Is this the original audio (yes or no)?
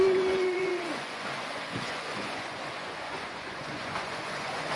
no